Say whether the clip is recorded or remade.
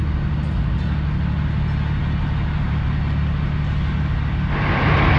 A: recorded